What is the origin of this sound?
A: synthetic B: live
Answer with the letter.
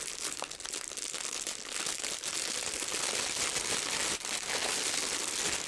B